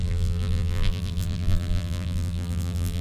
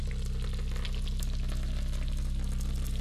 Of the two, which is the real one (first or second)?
second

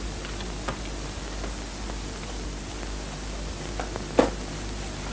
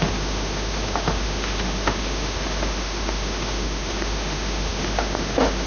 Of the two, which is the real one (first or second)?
first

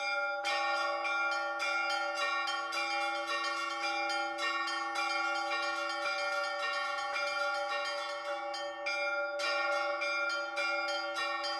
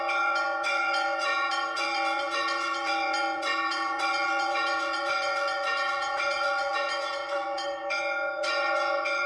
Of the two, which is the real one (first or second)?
first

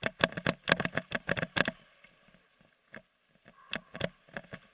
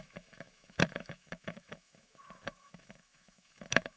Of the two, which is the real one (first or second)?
first